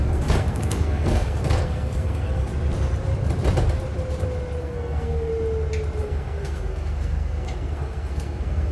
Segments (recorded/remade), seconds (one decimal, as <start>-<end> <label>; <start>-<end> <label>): 0.0-2.5 remade; 2.5-4.6 recorded; 4.6-5.3 remade; 5.3-6.0 recorded; 6.0-8.7 remade